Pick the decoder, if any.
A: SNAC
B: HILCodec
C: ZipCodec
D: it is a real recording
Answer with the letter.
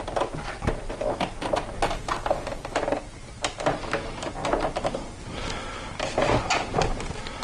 D